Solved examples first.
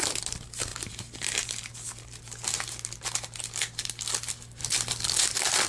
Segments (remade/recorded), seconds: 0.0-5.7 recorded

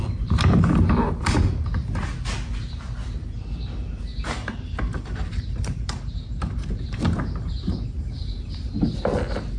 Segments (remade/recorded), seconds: 0.0-4.1 recorded; 4.1-8.8 remade; 8.8-9.6 recorded

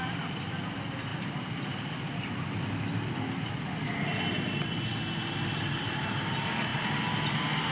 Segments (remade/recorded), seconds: 0.0-7.7 recorded

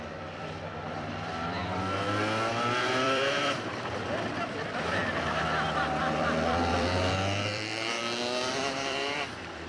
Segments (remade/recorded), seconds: 0.0-1.6 remade; 1.6-2.5 recorded; 2.5-5.0 remade; 5.0-6.0 recorded; 6.0-8.0 remade; 8.0-8.7 recorded; 8.7-9.7 remade